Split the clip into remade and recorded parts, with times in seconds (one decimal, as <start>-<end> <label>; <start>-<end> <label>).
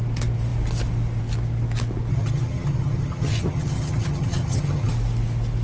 0.0-2.1 recorded; 2.1-4.9 remade; 4.9-5.6 recorded